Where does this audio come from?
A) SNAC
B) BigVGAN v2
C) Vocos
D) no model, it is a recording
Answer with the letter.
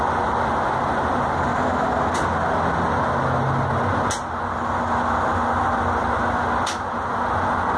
D